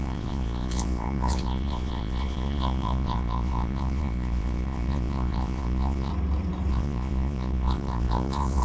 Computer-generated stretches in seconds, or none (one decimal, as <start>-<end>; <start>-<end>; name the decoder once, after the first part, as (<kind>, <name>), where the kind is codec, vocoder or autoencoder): 0.0-6.1 (vocoder, Vocos); 6.7-8.6